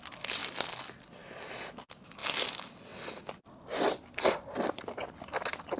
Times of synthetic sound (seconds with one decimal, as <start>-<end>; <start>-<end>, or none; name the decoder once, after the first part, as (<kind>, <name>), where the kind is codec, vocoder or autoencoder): none